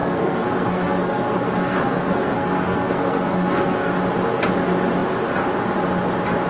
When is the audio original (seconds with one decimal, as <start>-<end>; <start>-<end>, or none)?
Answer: 3.9-6.5